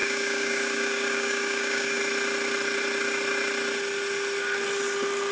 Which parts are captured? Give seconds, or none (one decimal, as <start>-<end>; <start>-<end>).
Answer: 2.0-5.3